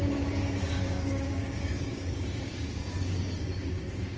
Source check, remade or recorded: remade